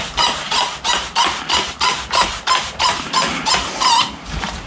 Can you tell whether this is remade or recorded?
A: remade